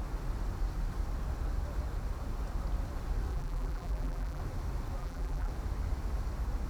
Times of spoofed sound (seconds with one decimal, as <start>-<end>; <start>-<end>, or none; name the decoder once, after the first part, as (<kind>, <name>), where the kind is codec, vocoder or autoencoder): 3.3-4.4 (vocoder, BigVGAN v2); 5.0-5.5